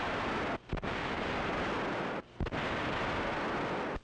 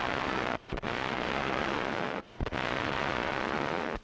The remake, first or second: second